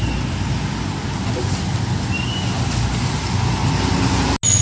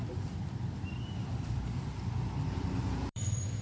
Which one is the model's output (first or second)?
second